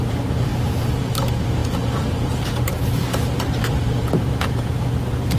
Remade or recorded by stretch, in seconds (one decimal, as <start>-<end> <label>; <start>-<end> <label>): 0.0-5.4 remade